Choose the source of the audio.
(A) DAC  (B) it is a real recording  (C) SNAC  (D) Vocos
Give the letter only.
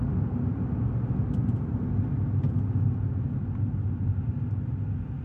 B